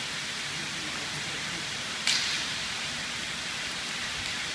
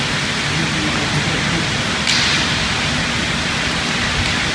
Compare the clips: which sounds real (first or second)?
second